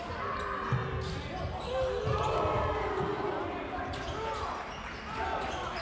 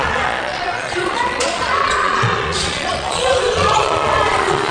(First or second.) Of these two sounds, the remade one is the second